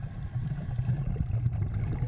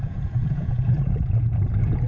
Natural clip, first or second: first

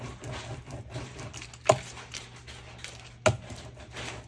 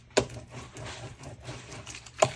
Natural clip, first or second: first